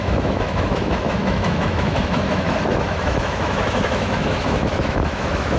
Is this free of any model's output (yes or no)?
no